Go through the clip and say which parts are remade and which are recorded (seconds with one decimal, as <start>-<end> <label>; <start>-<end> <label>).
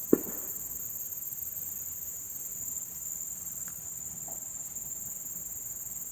0.0-1.1 remade; 1.1-2.1 recorded; 2.1-2.5 remade; 2.5-4.5 recorded; 4.5-6.1 remade